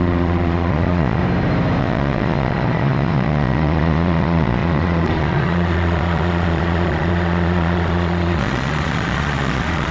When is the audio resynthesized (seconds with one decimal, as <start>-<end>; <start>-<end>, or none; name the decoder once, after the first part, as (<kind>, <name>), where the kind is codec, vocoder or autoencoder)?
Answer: 0.0-1.2 (vocoder, Vocos); 1.8-9.9